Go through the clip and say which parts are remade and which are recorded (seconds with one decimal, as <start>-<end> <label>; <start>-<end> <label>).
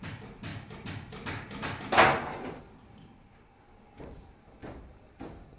0.0-5.6 recorded